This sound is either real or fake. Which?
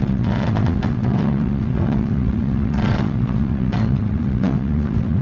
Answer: fake